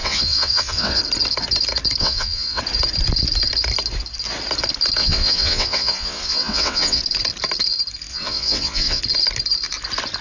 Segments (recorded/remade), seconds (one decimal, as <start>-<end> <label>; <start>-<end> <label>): 0.0-1.0 remade; 1.0-2.0 recorded; 2.0-2.6 remade; 2.6-5.0 recorded; 5.0-7.0 remade; 7.0-8.1 recorded; 8.1-9.0 remade; 9.0-10.2 recorded